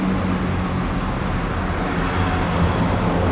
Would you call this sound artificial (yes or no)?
no